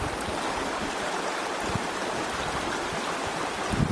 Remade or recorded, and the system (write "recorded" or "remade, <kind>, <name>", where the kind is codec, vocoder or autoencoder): recorded